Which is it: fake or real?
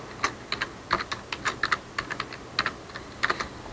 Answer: real